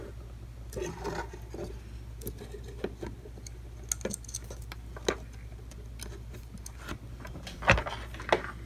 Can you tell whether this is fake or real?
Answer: real